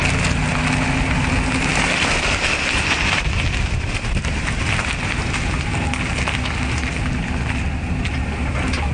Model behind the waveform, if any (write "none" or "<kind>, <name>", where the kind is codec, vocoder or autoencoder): none